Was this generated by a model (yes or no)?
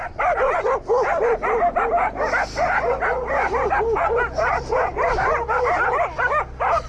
no